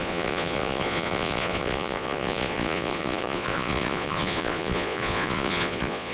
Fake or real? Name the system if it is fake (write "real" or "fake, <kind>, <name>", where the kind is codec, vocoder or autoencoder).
fake, vocoder, Vocos